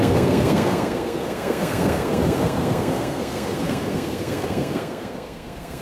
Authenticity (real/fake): fake